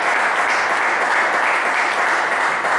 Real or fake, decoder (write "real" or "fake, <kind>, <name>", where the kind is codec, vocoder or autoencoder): real